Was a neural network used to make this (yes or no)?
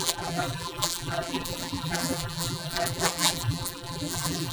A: yes